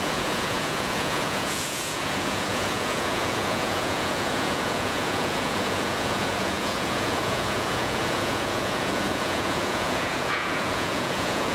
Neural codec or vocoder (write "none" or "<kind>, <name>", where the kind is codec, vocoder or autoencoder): vocoder, Vocos